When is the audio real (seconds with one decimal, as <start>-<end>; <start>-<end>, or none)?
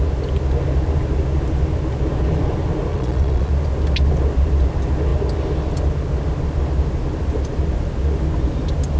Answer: 0.0-2.9; 3.5-9.0